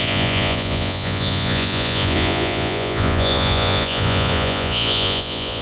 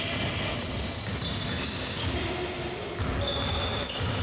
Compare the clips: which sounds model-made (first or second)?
first